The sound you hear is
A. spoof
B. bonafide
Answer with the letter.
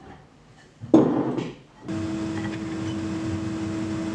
B